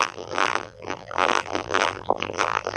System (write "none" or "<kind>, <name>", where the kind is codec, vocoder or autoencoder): vocoder, BigVGAN v2